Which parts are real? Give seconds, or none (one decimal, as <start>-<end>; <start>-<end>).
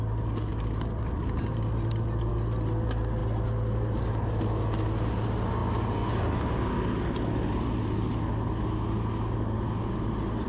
0.0-0.5; 2.3-10.5